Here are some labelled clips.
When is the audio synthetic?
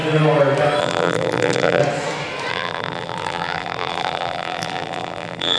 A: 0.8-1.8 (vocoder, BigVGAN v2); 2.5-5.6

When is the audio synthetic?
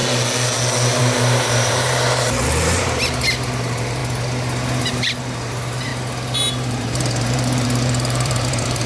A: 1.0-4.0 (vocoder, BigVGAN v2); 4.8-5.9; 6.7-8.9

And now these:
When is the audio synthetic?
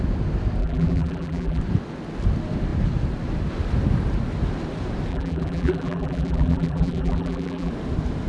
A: 0.6-1.6 (vocoder, BigVGAN v2); 5.1-7.7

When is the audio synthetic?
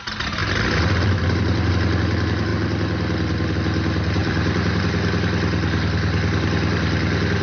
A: 0.4-1.7 (vocoder, BigVGAN v2); 4.2-4.8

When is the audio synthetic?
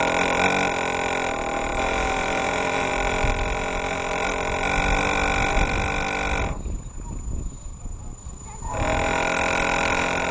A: 1.7-2.9 (vocoder, BigVGAN v2); 7.7-8.4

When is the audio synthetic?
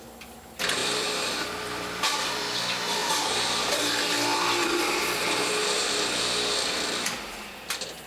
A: 0.8-2.6 (vocoder, BigVGAN v2); 3.0-3.8; 5.4-6.2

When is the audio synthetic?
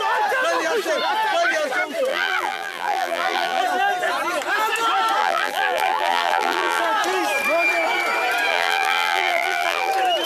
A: 2.1-3.6 (vocoder, BigVGAN v2); 5.2-6.8; 8.5-9.9